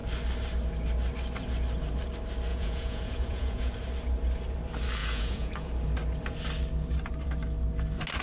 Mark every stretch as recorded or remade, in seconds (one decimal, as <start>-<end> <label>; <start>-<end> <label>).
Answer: 0.0-2.5 recorded; 2.5-3.7 remade; 3.7-5.0 recorded; 5.0-5.7 remade; 5.7-8.2 recorded